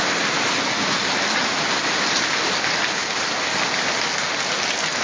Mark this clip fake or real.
real